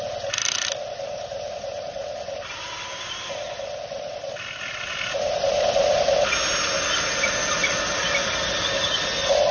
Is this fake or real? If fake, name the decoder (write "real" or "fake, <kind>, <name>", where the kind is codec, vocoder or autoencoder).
real